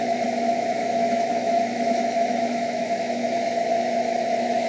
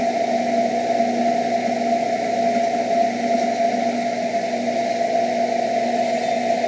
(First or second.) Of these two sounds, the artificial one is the first